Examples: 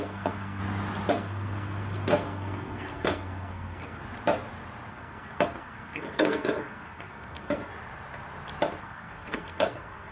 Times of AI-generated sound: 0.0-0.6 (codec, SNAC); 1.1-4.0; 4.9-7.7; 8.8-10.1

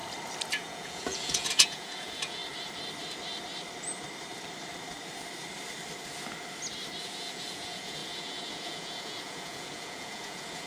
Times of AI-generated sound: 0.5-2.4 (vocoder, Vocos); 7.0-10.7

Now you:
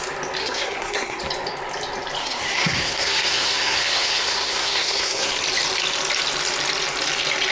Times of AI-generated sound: 0.4-1.2 (codec, SNAC); 2.2-5.3

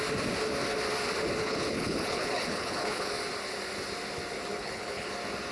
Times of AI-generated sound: 1.4-3.1 (codec, HILCodec); 4.5-5.1

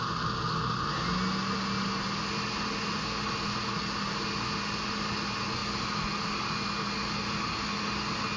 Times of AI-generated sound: none

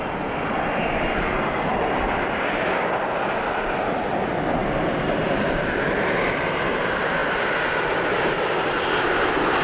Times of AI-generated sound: none